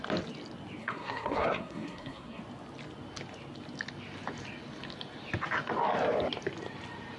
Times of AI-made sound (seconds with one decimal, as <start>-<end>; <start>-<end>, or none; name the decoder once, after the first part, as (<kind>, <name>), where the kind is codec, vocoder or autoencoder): 0.8-2.4 (codec, SNAC)